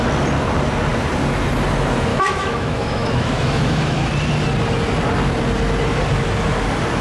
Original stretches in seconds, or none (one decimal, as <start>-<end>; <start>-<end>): 0.0-2.1; 4.1-7.0

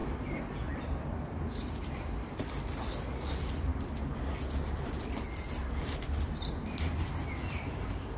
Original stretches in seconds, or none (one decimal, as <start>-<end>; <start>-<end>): 2.2-3.7; 6.3-8.2